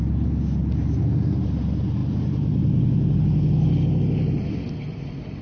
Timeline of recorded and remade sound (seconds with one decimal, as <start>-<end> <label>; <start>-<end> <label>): 0.0-5.4 recorded